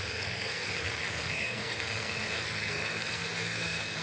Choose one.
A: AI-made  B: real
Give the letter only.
A